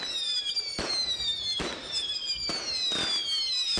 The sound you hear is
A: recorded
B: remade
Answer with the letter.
A